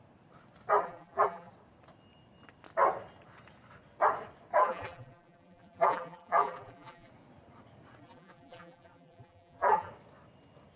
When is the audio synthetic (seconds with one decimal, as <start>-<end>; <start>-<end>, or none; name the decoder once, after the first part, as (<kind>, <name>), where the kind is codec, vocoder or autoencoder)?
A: 0.8-1.5 (vocoder, BigVGAN v2); 4.6-7.1; 8.0-9.9